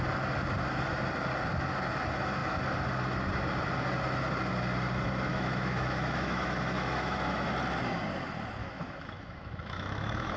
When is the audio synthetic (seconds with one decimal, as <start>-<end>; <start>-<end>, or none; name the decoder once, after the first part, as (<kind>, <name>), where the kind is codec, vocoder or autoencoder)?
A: 5.3-7.5 (autoencoder, DAC-VAE); 8.6-10.4